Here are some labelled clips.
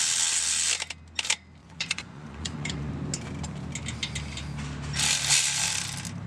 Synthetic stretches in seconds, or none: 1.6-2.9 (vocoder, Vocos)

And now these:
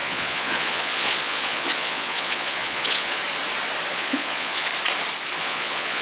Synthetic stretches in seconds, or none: 0.0-3.2 (vocoder, Vocos); 3.9-4.7; 5.4-6.0

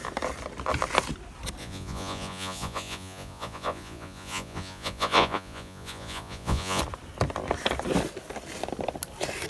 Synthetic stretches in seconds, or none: 1.6-6.8 (vocoder, Vocos)

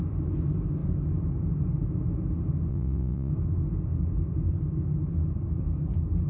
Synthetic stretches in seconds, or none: 2.7-3.3 (vocoder, Vocos)

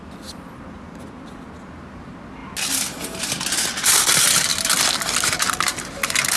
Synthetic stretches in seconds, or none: none

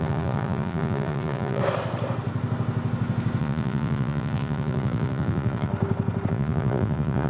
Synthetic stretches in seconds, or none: 0.0-1.6 (vocoder, Vocos); 3.4-5.7; 6.3-7.3